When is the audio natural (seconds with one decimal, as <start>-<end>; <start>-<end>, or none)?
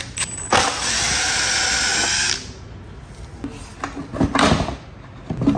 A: 0.0-5.6